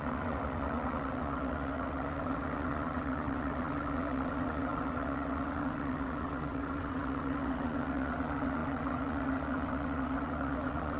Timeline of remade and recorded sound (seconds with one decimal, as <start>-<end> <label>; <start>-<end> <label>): 0.0-11.0 remade